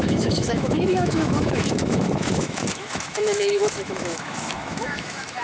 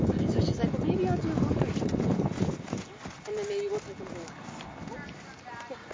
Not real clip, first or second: first